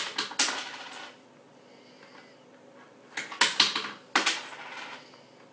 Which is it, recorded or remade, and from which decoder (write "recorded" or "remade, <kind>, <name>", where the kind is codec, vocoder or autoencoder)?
recorded